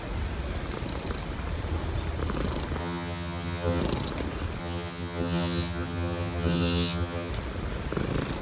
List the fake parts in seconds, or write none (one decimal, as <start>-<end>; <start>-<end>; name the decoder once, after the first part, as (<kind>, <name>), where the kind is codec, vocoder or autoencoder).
2.8-3.8 (vocoder, HiFi-GAN); 4.6-7.3